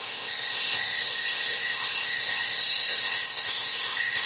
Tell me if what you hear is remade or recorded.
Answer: remade